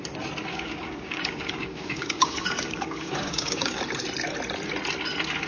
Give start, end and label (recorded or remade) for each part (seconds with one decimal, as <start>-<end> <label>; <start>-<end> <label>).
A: 0.0-0.5 recorded; 0.5-3.8 remade; 3.8-5.5 recorded